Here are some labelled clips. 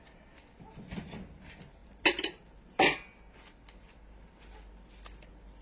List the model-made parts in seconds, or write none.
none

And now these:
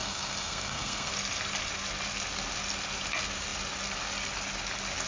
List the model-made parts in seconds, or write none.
0.0-1.1 (codec, SNAC)

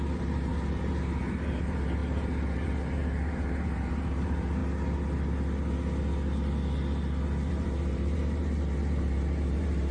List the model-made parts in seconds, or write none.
0.0-4.6 (vocoder, BigVGAN v2); 7.5-9.9

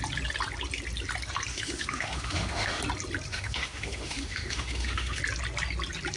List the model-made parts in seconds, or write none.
1.5-2.8 (autoencoder, DAC-VAE); 3.3-5.2

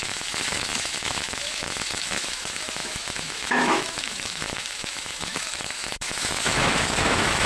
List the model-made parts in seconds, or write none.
0.0-7.5 (autoencoder, DAC-VAE)

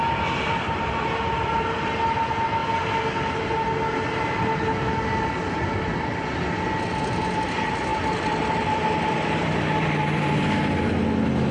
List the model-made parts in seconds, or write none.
7.9-10.9 (vocoder, BigVGAN v2)

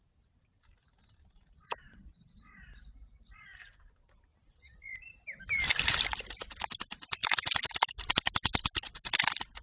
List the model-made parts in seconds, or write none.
4.3-5.7 (vocoder, BigVGAN v2)

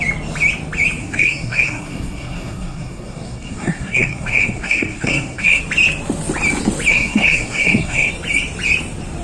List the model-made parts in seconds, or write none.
1.0-5.6 (codec, SNAC); 6.9-8.1